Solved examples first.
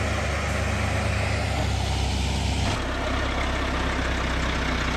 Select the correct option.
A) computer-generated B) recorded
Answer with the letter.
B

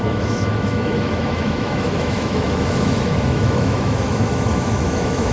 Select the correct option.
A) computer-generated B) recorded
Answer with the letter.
A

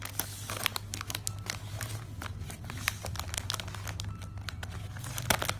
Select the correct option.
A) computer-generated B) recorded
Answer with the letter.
B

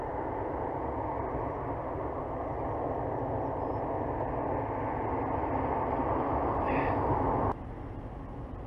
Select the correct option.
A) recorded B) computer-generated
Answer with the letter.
A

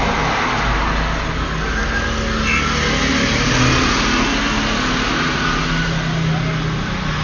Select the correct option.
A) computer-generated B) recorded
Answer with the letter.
B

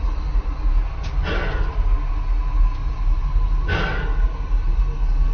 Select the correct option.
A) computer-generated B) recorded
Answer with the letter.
B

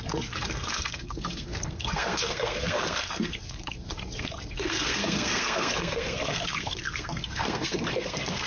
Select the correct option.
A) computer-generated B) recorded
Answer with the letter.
A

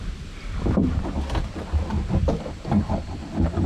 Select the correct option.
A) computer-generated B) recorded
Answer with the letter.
A